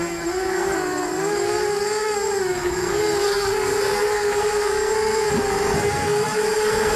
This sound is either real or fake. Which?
fake